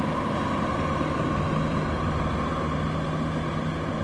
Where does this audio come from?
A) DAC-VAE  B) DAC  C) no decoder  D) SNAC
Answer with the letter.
C